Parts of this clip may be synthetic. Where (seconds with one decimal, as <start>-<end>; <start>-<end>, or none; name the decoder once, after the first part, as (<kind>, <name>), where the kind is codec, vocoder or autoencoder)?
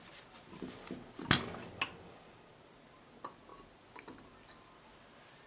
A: none